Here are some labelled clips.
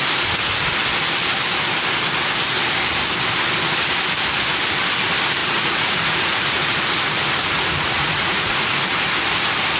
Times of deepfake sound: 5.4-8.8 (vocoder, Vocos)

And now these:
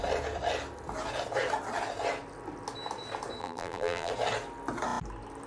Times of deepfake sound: 3.4-4.1 (vocoder, BigVGAN v2)

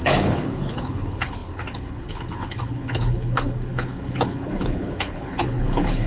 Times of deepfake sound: 0.0-6.1 (codec, HILCodec)

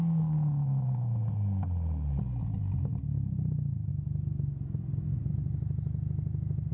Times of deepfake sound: none